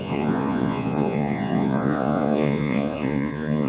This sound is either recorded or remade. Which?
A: remade